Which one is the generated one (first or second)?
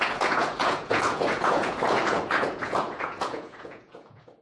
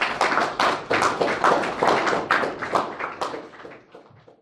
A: first